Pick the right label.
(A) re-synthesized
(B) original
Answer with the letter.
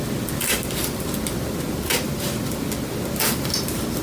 B